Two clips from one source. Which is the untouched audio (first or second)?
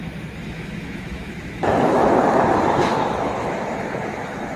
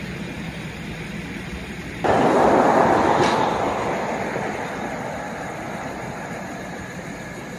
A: second